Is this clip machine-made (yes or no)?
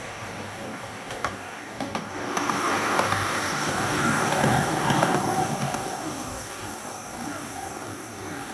yes